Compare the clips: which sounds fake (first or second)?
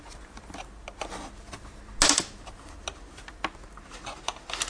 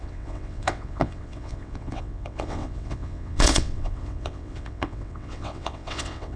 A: second